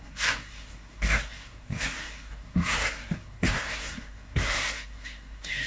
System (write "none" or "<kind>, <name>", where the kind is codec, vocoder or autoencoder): codec, SNAC